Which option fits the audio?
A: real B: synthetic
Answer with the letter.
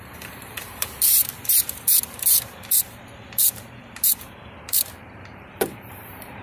B